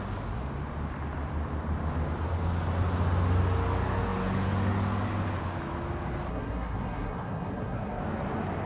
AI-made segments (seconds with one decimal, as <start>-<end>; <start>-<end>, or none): 6.3-8.0